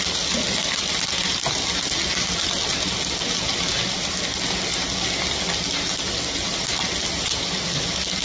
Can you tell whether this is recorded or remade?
recorded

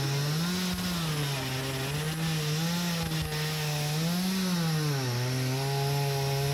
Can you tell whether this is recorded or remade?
recorded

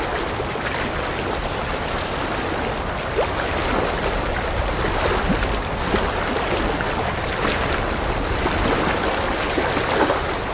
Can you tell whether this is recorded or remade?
recorded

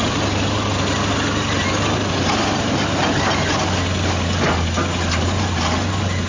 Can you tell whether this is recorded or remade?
recorded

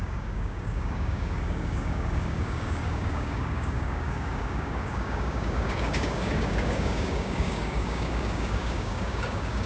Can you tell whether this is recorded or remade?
remade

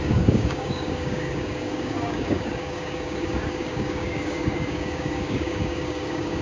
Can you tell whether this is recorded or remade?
remade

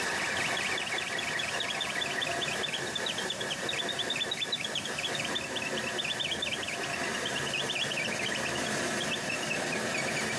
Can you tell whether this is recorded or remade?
recorded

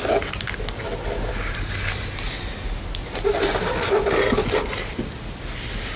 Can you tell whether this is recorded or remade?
recorded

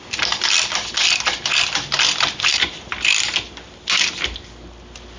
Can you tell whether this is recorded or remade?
recorded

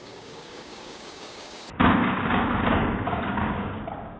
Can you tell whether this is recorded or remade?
remade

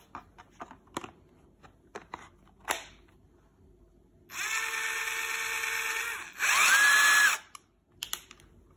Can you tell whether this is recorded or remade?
recorded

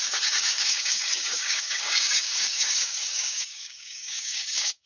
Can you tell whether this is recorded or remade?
remade